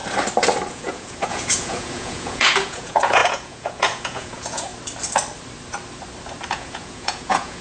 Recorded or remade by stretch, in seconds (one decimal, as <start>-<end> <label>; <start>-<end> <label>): 0.0-0.7 recorded; 0.7-4.7 remade; 4.7-6.5 recorded; 6.5-7.6 remade